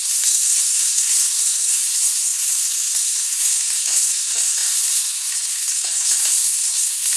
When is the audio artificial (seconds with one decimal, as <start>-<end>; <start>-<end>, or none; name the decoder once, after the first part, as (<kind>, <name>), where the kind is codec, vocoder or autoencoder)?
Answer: 0.0-7.2 (codec, SNAC)